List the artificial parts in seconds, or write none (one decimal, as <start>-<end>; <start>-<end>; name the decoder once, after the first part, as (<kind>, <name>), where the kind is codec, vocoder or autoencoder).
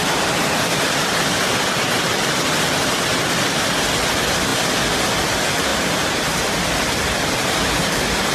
0.0-1.3 (vocoder, BigVGAN v2); 5.7-6.5